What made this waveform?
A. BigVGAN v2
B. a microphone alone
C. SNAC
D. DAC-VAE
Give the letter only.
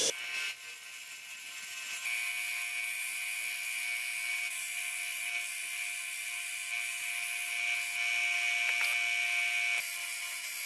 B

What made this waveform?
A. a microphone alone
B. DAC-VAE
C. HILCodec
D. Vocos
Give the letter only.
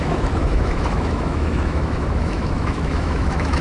B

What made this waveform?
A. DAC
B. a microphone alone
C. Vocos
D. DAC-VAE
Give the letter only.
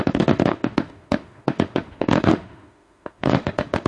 D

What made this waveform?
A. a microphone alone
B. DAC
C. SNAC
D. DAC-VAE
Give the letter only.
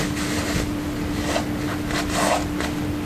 A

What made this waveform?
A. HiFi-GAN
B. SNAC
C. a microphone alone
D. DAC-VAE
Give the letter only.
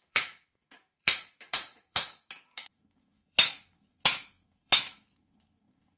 D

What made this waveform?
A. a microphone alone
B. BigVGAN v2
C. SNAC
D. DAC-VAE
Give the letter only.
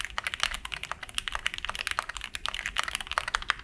A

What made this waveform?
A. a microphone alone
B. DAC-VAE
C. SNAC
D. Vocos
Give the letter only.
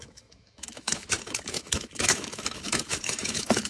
B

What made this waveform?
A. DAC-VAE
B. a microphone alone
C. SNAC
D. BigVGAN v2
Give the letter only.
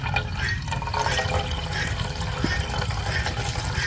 B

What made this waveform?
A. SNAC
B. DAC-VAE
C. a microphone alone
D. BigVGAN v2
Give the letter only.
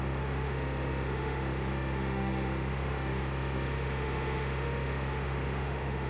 B